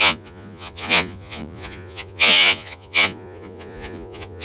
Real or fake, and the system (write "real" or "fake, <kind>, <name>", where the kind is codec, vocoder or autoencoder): fake, vocoder, Vocos